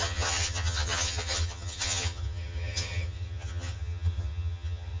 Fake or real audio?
fake